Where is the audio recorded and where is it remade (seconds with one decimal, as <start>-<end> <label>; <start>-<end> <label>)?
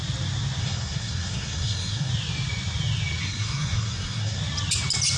0.0-0.6 recorded; 0.6-2.1 remade; 2.1-3.2 recorded; 3.2-4.4 remade; 4.4-5.2 recorded